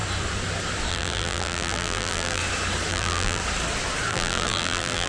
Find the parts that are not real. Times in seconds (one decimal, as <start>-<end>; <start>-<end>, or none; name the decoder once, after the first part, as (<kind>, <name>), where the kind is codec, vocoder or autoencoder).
0.9-2.4 (vocoder, BigVGAN v2); 2.9-3.4; 4.1-5.1